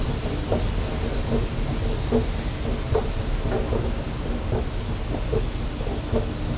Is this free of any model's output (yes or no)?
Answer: yes